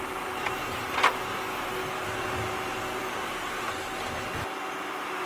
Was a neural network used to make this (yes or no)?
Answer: no